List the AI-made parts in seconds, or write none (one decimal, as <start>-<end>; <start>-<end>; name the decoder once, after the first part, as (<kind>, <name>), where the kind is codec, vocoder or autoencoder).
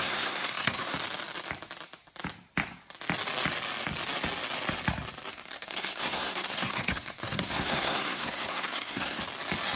0.0-0.9 (codec, SNAC); 5.3-9.2